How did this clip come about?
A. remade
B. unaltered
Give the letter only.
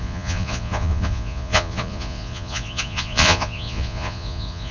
A